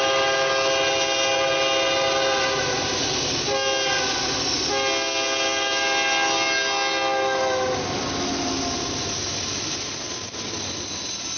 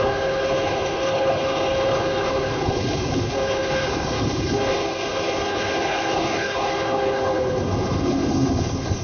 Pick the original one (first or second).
first